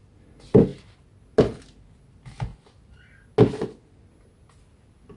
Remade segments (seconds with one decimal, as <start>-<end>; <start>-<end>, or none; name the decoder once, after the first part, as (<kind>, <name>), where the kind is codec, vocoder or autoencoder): none